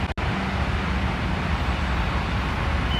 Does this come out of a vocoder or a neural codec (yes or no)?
no